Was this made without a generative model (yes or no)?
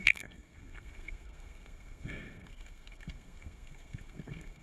no